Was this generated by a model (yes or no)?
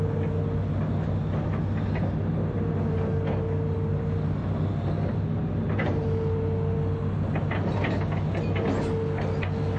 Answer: no